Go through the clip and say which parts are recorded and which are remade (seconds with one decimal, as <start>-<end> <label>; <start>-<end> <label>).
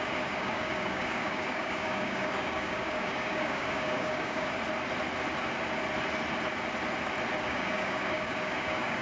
0.0-4.6 remade; 4.6-7.4 recorded; 7.4-9.0 remade